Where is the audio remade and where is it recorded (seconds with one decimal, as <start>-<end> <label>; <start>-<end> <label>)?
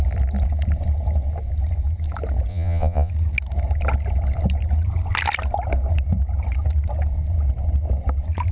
0.0-2.5 recorded; 2.5-3.1 remade; 3.1-8.5 recorded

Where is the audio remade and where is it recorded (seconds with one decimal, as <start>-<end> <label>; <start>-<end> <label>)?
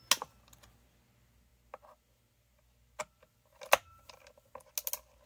0.0-5.3 recorded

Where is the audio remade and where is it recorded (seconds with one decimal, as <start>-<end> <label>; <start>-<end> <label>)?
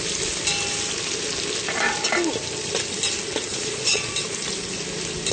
0.0-3.5 recorded; 3.5-4.1 remade; 4.1-5.3 recorded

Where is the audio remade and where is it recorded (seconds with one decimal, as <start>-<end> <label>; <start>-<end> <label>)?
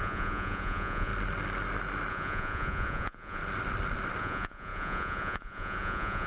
0.0-1.1 remade; 1.1-2.1 recorded; 2.1-3.4 remade; 3.4-4.2 recorded; 4.2-6.3 remade